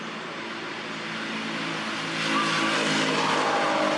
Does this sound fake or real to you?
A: real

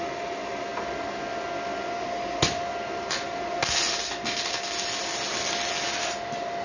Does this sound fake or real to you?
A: real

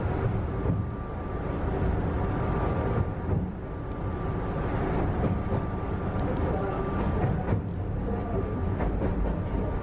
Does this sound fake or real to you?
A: real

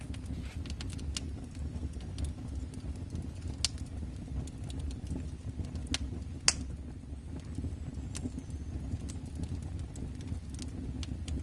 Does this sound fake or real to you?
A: real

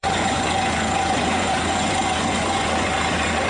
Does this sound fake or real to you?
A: fake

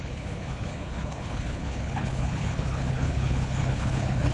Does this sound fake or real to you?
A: fake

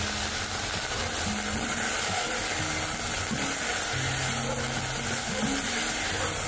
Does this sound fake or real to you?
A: real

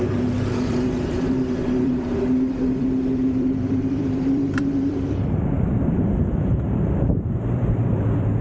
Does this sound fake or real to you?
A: fake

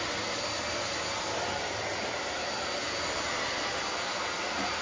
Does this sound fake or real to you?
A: real